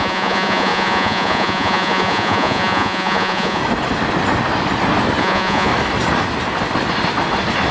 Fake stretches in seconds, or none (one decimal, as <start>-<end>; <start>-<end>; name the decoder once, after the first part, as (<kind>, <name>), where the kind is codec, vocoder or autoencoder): 0.0-3.6 (vocoder, Vocos); 5.2-5.7